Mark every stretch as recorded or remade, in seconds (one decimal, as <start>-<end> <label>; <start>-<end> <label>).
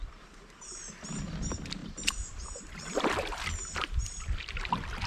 0.0-1.8 recorded; 1.8-5.1 remade